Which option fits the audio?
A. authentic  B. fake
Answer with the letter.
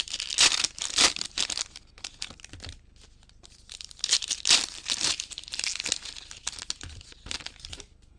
A